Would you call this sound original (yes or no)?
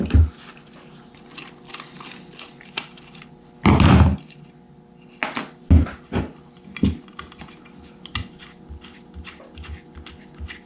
yes